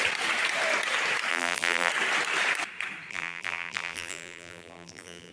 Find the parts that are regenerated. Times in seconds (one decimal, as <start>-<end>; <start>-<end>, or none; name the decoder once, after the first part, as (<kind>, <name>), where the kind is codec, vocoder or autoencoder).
1.3-1.9 (vocoder, BigVGAN v2); 3.1-5.3